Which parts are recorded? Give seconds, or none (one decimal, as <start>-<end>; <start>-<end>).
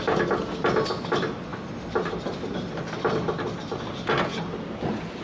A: 0.0-5.2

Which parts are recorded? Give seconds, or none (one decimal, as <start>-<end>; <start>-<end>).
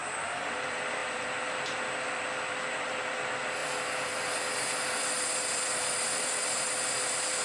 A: none